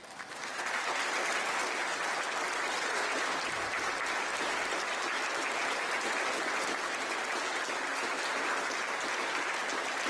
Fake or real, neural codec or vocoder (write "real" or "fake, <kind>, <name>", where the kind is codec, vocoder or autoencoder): real